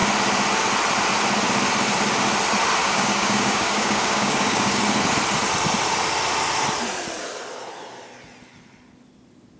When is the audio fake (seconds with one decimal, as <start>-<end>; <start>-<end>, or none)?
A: 2.8-4.8